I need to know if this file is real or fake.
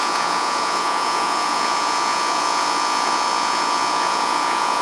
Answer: fake